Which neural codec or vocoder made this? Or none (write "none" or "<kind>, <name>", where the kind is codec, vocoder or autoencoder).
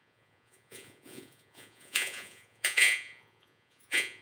vocoder, Vocos